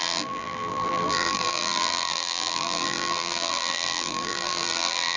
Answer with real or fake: fake